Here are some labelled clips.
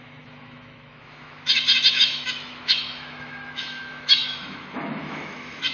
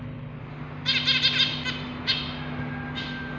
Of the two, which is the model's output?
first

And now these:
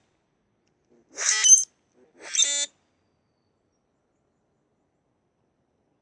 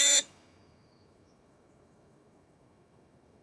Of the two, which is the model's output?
second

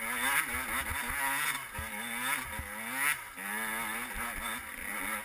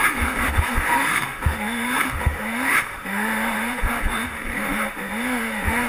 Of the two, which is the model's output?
second